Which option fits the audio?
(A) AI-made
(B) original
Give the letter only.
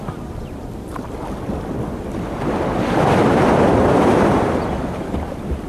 A